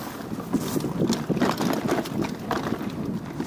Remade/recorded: recorded